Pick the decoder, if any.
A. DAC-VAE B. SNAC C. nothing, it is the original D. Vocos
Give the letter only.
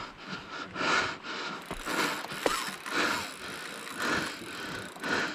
C